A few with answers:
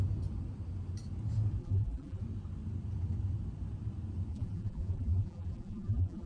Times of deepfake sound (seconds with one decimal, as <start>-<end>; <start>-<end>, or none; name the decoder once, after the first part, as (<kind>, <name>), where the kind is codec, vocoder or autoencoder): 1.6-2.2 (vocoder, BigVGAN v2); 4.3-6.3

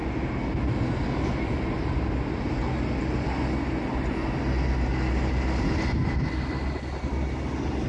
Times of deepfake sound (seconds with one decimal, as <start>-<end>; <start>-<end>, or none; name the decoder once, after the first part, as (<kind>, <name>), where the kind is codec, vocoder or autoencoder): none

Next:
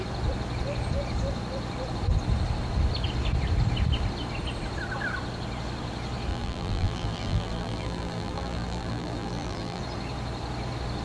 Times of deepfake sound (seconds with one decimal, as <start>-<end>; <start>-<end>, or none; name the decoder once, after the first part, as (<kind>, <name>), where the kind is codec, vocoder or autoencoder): 6.3-9.8 (vocoder, BigVGAN v2)

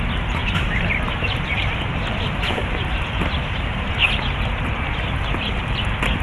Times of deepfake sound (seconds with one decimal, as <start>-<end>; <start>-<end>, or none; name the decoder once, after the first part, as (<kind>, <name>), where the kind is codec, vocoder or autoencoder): 0.4-4.1 (vocoder, BigVGAN v2)

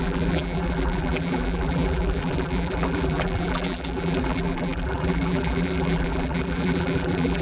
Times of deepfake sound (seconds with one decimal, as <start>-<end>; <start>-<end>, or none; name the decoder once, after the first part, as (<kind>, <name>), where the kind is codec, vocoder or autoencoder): 0.0-7.4 (vocoder, BigVGAN v2)

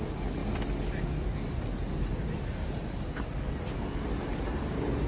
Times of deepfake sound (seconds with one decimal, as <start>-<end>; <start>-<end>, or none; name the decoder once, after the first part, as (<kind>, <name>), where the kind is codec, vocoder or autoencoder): 0.0-0.4 (vocoder, BigVGAN v2); 3.5-5.1